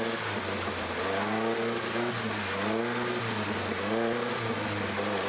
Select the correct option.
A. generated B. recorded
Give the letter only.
B